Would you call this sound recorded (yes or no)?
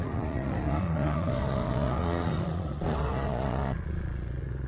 no